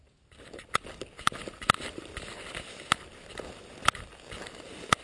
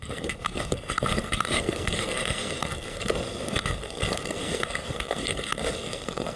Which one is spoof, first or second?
second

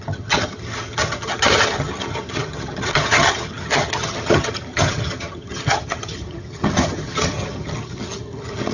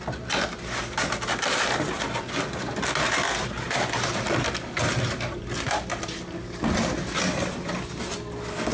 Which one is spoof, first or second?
first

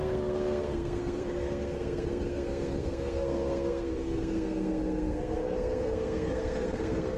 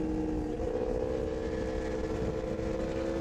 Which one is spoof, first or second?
first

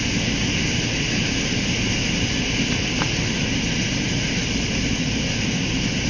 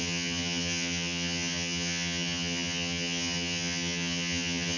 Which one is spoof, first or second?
second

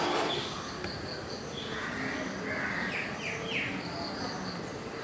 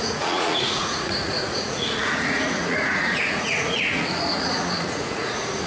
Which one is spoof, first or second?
second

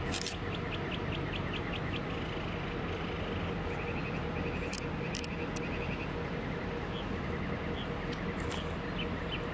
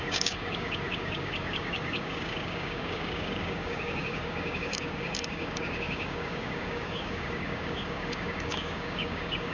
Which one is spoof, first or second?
second